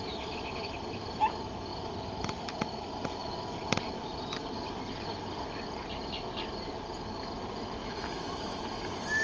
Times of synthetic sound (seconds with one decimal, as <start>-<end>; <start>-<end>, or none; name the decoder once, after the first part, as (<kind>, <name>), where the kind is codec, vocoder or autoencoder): 7.8-8.6 (autoencoder, DAC-VAE)